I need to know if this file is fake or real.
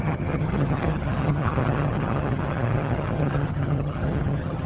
fake